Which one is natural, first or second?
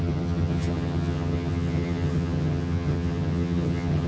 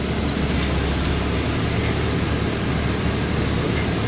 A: second